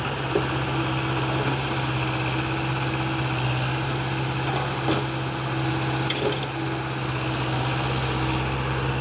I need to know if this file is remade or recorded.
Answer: recorded